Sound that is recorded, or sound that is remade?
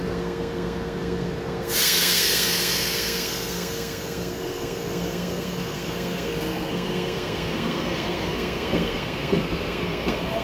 remade